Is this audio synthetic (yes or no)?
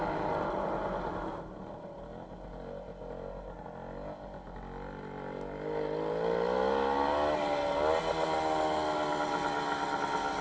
no